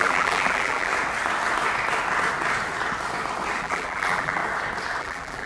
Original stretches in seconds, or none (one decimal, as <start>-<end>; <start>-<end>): 0.9-3.6; 4.4-5.0